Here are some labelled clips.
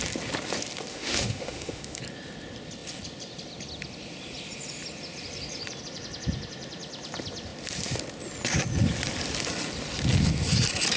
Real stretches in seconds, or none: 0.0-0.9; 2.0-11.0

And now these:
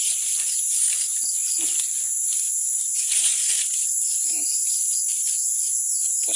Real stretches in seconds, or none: 0.0-6.4

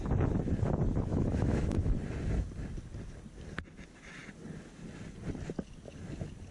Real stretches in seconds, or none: 0.0-1.1; 1.9-6.5

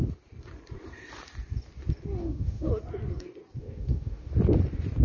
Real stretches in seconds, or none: 0.0-2.2; 2.7-3.6; 4.3-5.0

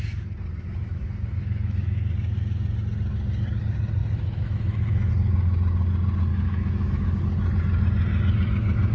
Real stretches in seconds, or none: 0.0-0.8; 2.1-4.0; 5.1-6.3; 7.2-8.9

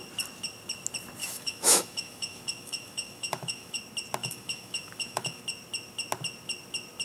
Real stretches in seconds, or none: 0.0-1.2; 3.8-4.2; 5.4-7.0

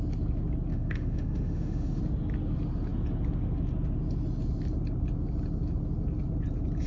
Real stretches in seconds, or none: 0.0-0.7; 2.0-6.9